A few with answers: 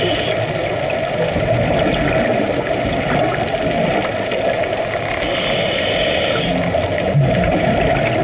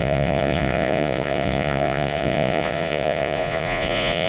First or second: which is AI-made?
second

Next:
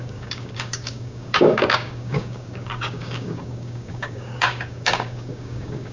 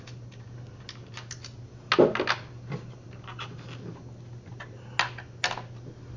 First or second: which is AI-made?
first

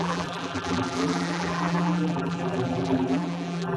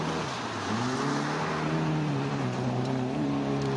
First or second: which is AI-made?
first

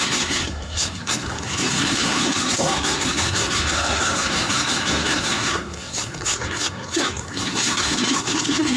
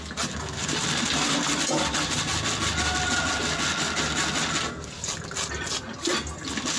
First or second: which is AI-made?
first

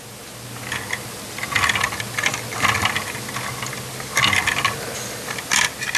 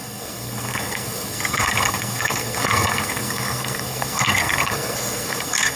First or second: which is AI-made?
second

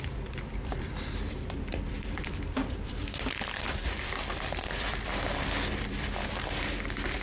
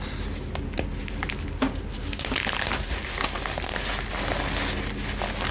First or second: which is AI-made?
first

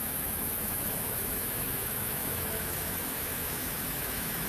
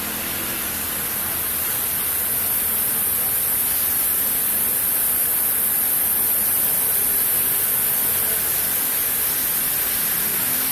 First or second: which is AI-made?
first